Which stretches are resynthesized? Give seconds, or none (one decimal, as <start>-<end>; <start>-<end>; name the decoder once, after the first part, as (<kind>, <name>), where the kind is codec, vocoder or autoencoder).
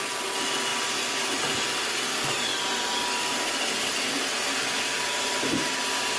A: none